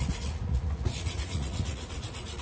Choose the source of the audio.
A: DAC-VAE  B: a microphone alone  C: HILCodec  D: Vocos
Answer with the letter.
D